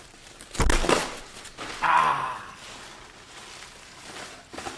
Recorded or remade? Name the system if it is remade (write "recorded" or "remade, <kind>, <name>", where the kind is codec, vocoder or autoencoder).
recorded